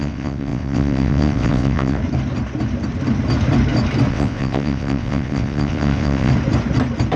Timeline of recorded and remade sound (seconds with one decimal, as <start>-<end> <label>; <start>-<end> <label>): 0.0-2.0 remade; 2.0-4.1 recorded; 4.1-6.3 remade; 6.3-7.2 recorded